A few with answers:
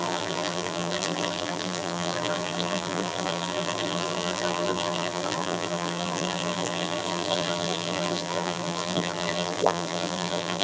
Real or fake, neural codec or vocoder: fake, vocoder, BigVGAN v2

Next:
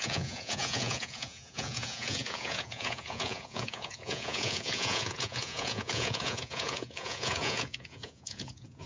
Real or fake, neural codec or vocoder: fake, vocoder, Vocos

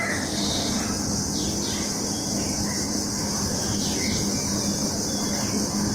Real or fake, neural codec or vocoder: real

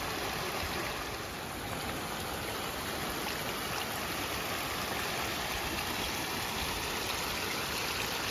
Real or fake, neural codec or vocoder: real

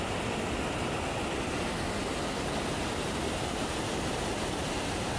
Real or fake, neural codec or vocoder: real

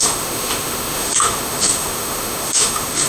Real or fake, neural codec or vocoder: fake, autoencoder, DAC-VAE